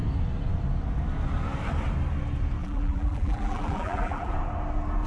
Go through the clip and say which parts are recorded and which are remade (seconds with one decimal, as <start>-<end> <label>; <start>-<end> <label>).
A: 0.0-2.6 recorded; 2.6-4.3 remade; 4.3-5.1 recorded